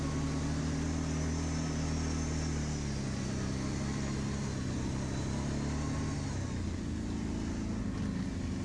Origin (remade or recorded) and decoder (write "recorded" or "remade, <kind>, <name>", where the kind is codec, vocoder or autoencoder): recorded